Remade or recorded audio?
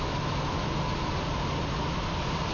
recorded